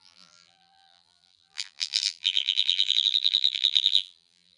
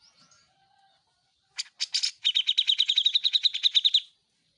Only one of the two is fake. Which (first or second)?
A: first